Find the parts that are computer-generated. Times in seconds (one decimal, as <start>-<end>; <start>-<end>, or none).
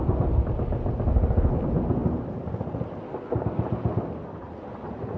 none